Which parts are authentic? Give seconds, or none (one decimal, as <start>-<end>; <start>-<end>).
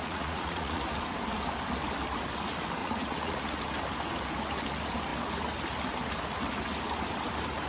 0.8-2.8; 3.6-7.7